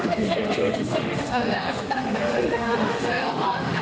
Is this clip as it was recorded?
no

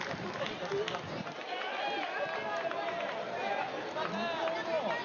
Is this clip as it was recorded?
yes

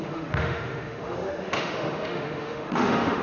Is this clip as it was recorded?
no